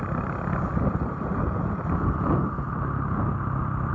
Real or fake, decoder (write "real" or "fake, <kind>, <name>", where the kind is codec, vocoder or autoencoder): real